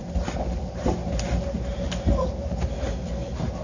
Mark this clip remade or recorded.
recorded